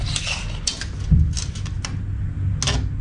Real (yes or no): yes